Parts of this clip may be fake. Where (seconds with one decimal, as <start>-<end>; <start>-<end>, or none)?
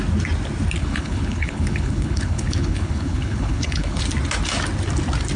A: 0.8-4.0